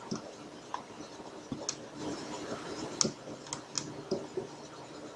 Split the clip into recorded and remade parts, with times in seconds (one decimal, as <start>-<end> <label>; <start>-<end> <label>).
0.0-2.0 recorded; 2.0-3.0 remade; 3.0-5.2 recorded